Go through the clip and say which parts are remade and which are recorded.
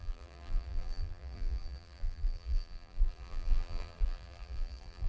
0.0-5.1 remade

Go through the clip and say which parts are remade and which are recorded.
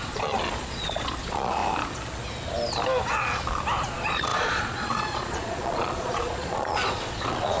0.0-1.6 remade; 1.6-3.9 recorded; 3.9-7.6 remade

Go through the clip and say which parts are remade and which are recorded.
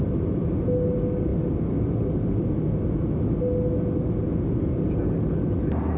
0.0-6.0 recorded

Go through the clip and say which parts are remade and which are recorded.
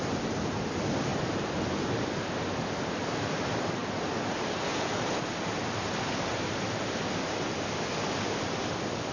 0.0-1.1 remade; 1.1-2.0 recorded; 2.0-3.8 remade; 3.8-8.1 recorded; 8.1-9.1 remade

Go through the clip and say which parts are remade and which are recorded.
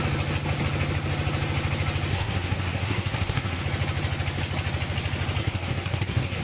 0.0-2.1 recorded; 2.1-3.6 remade; 3.6-5.4 recorded; 5.4-6.4 remade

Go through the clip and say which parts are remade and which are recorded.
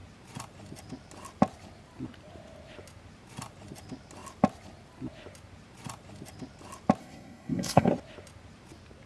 0.0-7.0 recorded; 7.0-7.9 remade; 7.9-9.1 recorded